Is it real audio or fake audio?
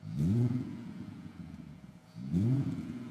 fake